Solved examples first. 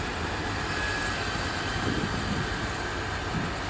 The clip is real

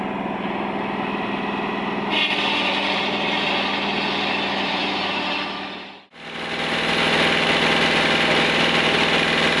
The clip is real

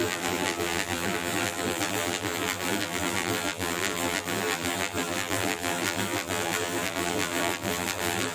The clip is fake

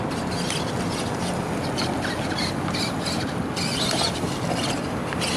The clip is real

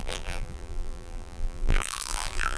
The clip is fake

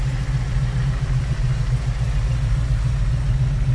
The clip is real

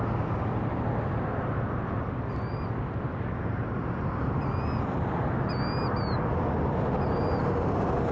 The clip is real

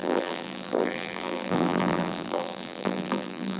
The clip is fake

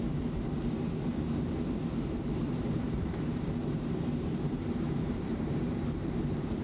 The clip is fake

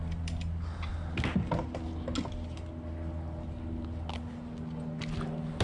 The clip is real